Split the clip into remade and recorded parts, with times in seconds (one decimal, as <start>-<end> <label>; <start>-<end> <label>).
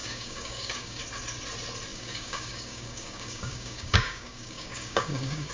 0.0-1.0 remade; 1.0-1.9 recorded; 1.9-5.5 remade